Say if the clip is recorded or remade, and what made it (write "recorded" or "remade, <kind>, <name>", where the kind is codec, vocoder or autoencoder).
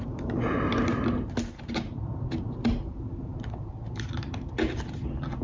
recorded